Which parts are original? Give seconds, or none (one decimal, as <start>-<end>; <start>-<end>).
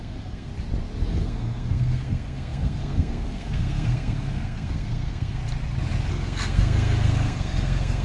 0.5-1.1; 5.4-6.1